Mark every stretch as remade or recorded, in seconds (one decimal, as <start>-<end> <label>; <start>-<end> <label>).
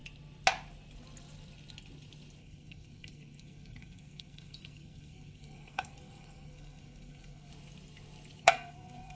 0.0-2.4 recorded; 2.4-7.5 remade; 7.5-8.4 recorded; 8.4-9.2 remade